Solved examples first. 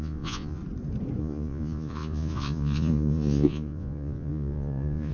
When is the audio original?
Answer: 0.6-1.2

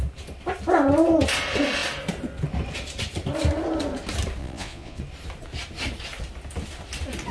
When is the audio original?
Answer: 0.0-4.4; 5.0-7.3

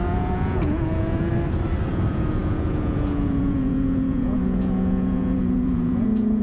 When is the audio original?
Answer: 1.3-1.9

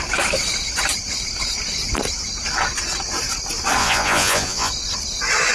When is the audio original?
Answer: 0.0-3.8; 4.7-5.5

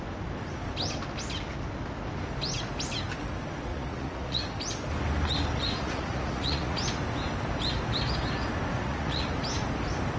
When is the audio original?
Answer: 0.0-3.7; 4.4-5.8; 6.8-8.7; 9.4-10.2

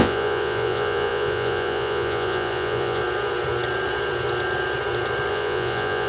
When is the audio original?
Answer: 3.0-5.3